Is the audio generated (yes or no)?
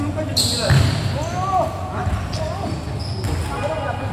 no